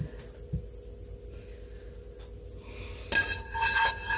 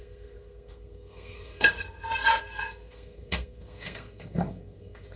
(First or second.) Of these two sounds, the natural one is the first